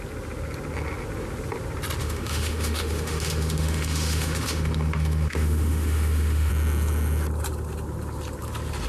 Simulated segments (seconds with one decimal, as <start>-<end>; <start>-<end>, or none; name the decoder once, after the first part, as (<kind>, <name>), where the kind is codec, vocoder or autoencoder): 2.0-6.5 (autoencoder, DAC-VAE)